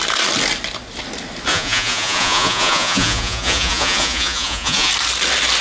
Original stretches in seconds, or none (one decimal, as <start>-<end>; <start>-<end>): 0.0-1.5; 4.9-5.6